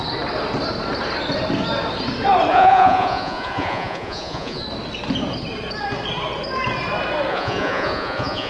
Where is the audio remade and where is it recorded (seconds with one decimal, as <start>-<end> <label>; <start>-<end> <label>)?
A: 0.0-2.5 recorded; 2.5-4.6 remade; 4.6-7.3 recorded; 7.3-8.5 remade